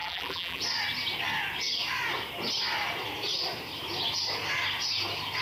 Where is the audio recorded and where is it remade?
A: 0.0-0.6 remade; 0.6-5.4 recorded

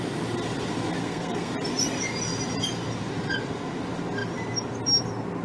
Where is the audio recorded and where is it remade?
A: 0.0-1.0 recorded; 1.0-1.5 remade; 1.5-5.4 recorded

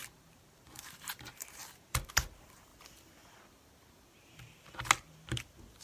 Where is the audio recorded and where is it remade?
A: 0.0-1.6 remade; 1.6-2.1 recorded; 2.1-2.7 remade; 2.7-5.8 recorded

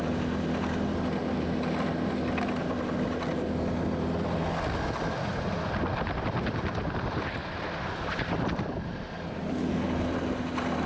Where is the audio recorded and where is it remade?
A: 0.0-10.9 recorded

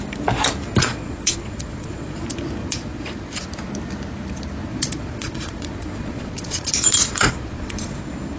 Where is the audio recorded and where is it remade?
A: 0.0-0.8 recorded; 0.8-2.2 remade; 2.2-2.6 recorded; 2.6-3.4 remade; 3.4-4.7 recorded; 4.7-8.0 remade; 8.0-8.4 recorded

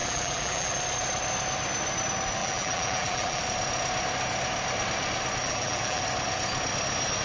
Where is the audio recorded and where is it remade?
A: 0.0-0.7 remade; 0.7-2.4 recorded; 2.4-3.4 remade; 3.4-5.4 recorded; 5.4-6.0 remade; 6.0-7.2 recorded